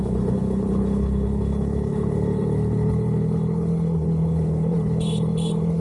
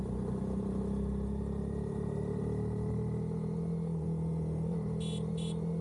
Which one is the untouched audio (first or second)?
second